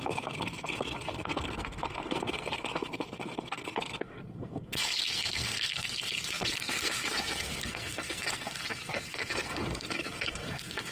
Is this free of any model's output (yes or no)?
no